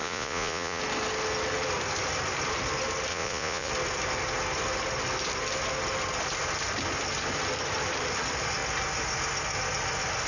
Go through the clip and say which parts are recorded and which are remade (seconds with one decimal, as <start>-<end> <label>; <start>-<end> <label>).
0.0-0.8 remade; 0.8-3.1 recorded; 3.1-3.7 remade; 3.7-10.3 recorded